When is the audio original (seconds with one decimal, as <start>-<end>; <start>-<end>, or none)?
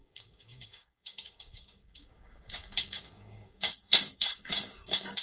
none